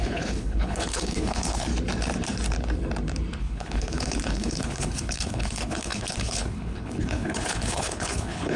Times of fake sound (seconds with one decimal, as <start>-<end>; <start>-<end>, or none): 0.0-1.7; 3.4-8.6